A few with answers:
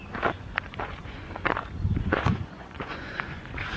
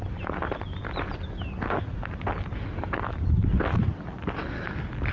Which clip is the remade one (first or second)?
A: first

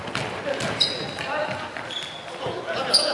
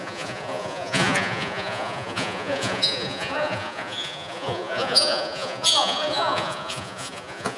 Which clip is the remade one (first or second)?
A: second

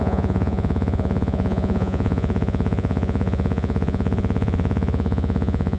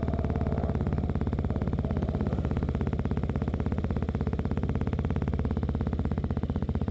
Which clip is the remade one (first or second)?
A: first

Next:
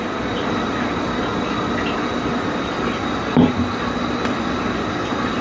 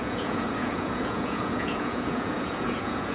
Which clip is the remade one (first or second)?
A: second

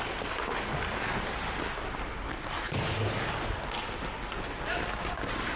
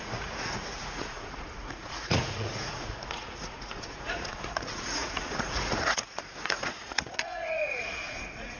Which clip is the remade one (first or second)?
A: second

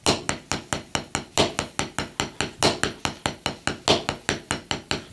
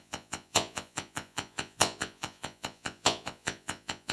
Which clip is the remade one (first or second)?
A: second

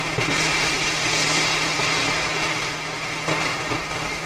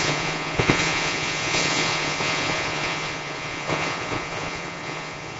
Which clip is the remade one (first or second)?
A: second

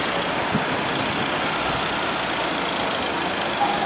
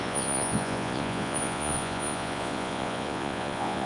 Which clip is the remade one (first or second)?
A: second